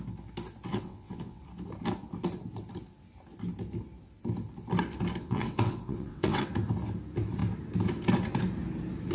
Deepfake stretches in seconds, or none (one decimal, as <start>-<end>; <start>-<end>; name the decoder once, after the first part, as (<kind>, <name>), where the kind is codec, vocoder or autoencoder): 0.7-1.4 (vocoder, WaveNeXt); 5.2-6.5